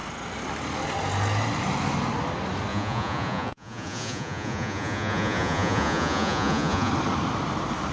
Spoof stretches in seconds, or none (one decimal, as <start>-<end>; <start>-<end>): 2.7-6.9

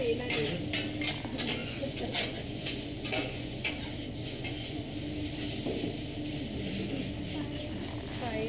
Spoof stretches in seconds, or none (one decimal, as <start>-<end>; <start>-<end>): 1.6-3.7; 4.2-4.8